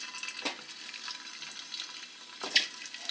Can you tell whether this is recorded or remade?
recorded